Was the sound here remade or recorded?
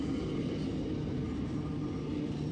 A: recorded